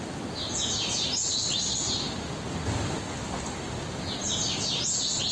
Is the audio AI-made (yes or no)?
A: no